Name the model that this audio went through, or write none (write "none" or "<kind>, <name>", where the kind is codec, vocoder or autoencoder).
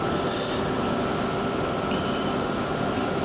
none